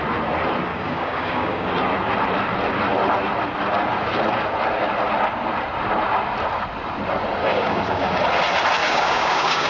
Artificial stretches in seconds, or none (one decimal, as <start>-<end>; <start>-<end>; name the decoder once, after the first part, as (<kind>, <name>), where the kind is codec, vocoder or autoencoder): 0.7-1.7 (codec, DAC); 7.4-8.2; 8.8-9.7